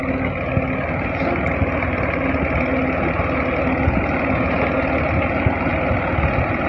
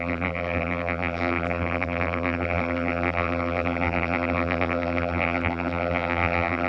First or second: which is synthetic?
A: second